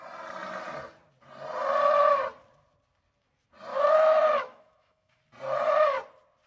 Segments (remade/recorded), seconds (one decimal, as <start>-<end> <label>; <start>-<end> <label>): 0.0-3.7 recorded; 3.7-5.2 remade; 5.2-6.5 recorded